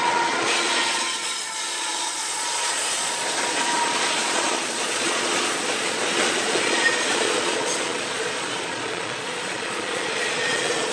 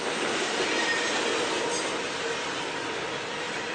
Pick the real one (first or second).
second